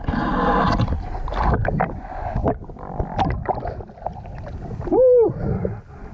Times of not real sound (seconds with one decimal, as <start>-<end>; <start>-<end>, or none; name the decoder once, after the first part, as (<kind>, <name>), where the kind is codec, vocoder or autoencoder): none